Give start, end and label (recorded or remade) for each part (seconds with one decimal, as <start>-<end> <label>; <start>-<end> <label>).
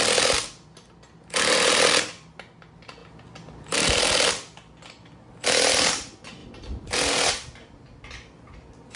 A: 0.0-9.0 recorded